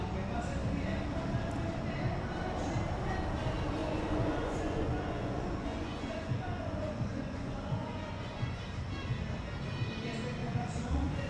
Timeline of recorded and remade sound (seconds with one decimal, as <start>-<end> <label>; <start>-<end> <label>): 0.0-3.8 recorded; 3.8-8.6 remade; 8.6-10.4 recorded; 10.4-11.3 remade